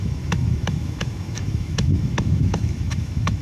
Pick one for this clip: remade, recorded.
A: remade